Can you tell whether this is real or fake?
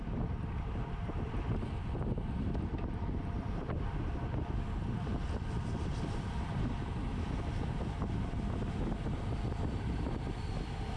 fake